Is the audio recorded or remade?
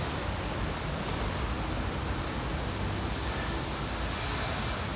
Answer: recorded